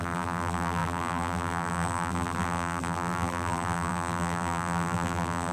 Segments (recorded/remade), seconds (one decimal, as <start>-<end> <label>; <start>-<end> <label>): 0.0-5.5 remade